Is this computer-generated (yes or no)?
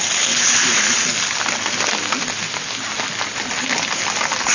no